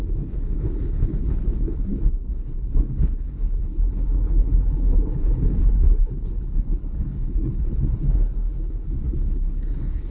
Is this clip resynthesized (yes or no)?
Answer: yes